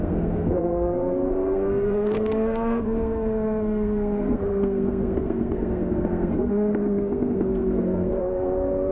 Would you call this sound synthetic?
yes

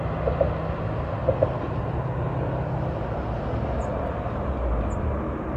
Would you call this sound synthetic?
no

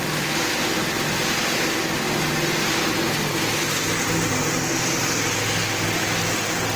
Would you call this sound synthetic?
no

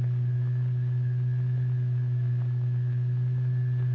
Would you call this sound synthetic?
no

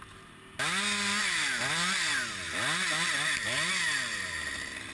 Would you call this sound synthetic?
no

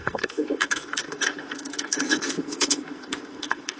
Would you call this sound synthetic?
yes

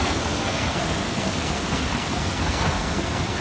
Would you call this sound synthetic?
yes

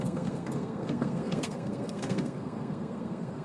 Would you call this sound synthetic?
yes